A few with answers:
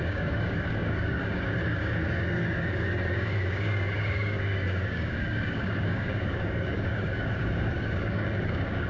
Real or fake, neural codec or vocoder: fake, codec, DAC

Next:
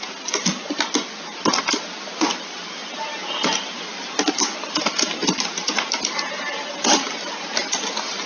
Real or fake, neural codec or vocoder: real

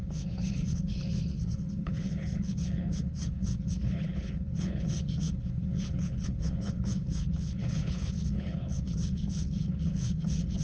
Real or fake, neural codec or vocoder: fake, codec, HILCodec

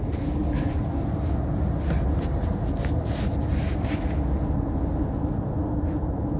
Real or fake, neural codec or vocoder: real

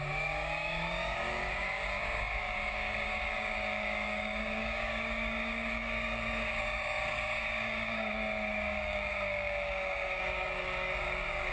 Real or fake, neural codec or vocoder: fake, codec, DAC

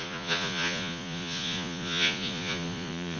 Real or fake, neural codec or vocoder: fake, vocoder, Vocos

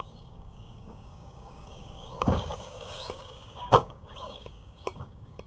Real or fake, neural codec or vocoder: fake, codec, DAC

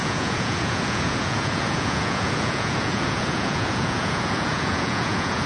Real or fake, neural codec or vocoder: fake, vocoder, Vocos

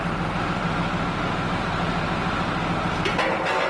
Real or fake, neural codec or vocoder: real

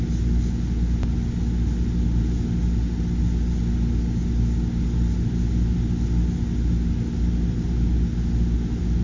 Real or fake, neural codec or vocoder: real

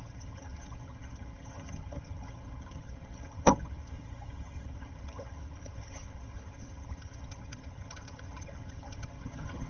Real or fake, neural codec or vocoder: fake, vocoder, HiFi-GAN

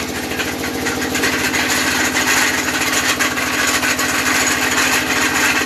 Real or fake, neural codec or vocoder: real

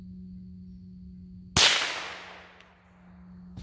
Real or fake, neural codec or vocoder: real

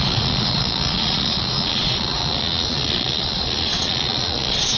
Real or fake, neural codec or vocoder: fake, vocoder, Vocos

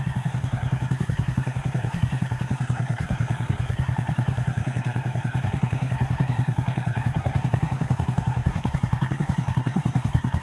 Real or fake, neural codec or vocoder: fake, codec, SNAC